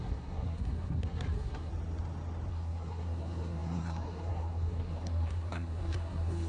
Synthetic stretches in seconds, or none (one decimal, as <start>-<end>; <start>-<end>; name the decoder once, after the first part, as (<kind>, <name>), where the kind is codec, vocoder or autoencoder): 0.0-1.7 (codec, SNAC); 2.5-6.5